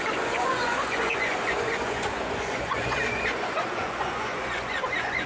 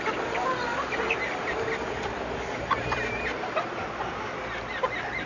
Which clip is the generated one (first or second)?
first